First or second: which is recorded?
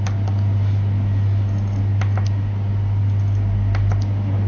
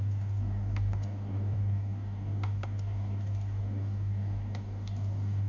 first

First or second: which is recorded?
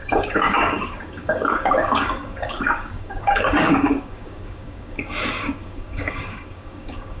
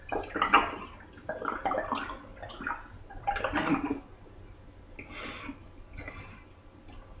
second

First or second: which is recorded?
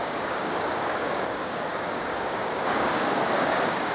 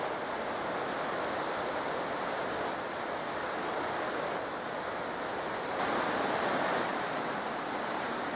second